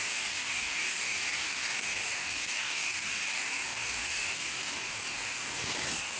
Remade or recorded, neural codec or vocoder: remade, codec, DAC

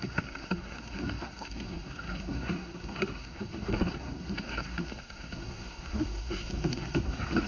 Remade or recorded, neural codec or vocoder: remade, codec, SNAC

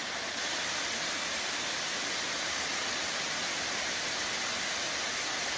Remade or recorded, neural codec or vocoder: recorded